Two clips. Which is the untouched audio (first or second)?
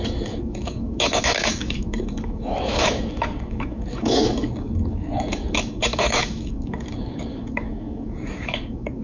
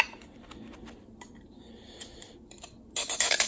second